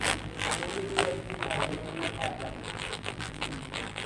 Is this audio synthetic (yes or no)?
yes